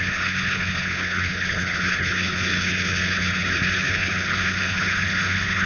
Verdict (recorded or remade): remade